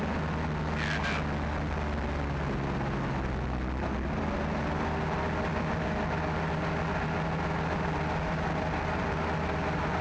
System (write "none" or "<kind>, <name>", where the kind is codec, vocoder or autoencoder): none